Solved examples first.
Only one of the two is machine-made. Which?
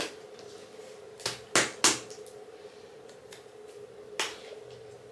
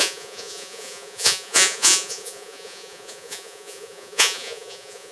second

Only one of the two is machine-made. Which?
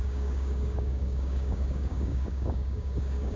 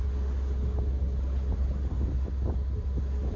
first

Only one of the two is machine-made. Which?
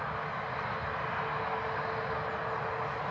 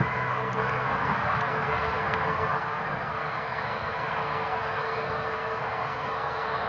second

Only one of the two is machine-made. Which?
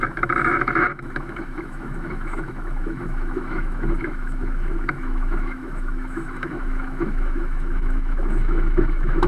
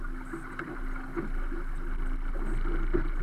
first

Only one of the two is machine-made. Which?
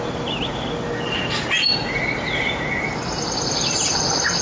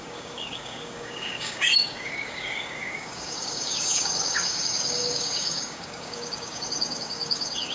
second